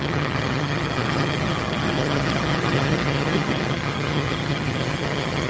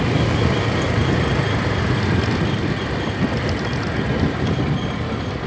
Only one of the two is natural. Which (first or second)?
second